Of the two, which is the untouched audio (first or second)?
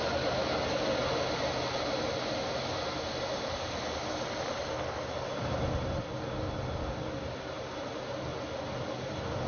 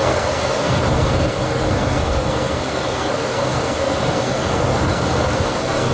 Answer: first